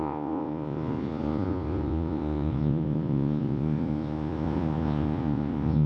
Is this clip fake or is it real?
fake